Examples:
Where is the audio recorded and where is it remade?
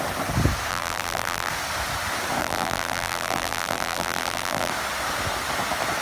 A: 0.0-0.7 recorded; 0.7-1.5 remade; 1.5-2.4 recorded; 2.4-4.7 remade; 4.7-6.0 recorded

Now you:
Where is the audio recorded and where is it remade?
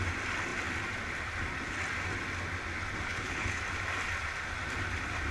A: 0.0-3.1 recorded; 3.1-3.6 remade; 3.6-5.3 recorded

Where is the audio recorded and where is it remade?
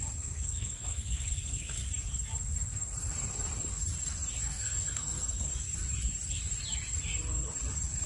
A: 0.0-1.8 remade; 1.8-4.4 recorded; 4.4-5.5 remade; 5.5-8.1 recorded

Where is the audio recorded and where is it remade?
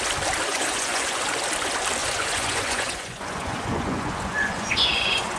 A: 0.0-0.5 recorded; 0.5-1.2 remade; 1.2-2.0 recorded; 2.0-5.4 remade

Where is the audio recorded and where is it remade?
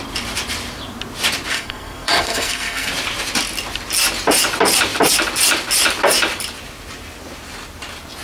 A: 0.0-1.5 recorded; 1.5-2.9 remade; 2.9-8.2 recorded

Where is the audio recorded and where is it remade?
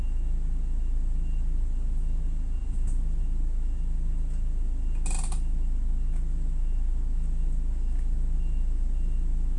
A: 0.0-2.6 recorded; 2.6-3.2 remade; 3.2-9.6 recorded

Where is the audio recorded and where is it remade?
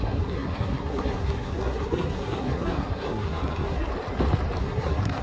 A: 0.0-3.9 remade; 3.9-4.6 recorded; 4.6-5.2 remade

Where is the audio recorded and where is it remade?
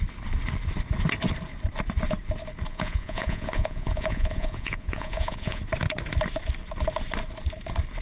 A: 0.0-2.7 recorded; 2.7-5.6 remade; 5.6-8.0 recorded